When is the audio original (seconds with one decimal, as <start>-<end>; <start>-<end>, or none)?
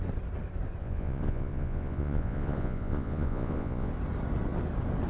0.0-0.8; 3.9-5.1